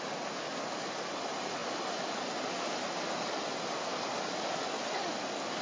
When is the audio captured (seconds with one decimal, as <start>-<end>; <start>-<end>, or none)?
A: 0.0-5.6